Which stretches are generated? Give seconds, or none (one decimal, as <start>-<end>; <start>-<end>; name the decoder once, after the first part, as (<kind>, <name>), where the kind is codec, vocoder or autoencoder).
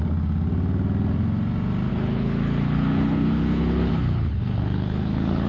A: 1.9-5.5 (codec, HILCodec)